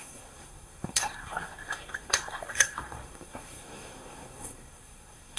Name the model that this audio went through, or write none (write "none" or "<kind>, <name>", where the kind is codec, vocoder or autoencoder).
codec, SNAC